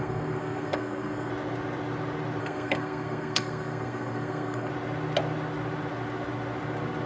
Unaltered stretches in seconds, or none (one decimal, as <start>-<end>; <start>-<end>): 1.3-2.4; 4.7-7.1